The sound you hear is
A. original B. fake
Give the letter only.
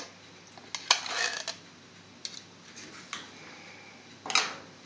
A